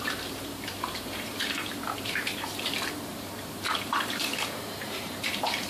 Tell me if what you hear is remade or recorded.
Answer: remade